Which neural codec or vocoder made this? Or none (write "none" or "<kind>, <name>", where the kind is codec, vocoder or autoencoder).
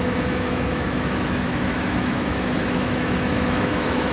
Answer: autoencoder, DAC-VAE